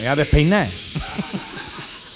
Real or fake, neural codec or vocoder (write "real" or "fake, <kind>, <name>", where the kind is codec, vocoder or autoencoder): fake, autoencoder, DAC-VAE